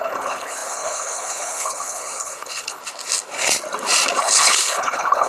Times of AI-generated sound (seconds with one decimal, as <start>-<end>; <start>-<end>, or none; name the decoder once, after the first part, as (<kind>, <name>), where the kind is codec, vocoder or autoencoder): 0.0-2.8 (codec, HILCodec); 4.2-5.3